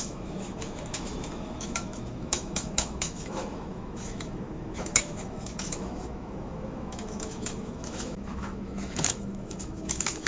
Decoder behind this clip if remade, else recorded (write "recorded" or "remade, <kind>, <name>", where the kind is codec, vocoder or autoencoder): remade, autoencoder, DAC-VAE